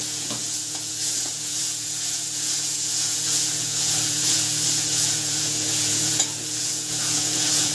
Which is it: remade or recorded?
remade